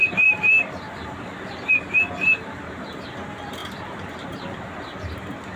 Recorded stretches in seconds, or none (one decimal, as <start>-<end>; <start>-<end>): 1.7-3.6; 4.6-5.6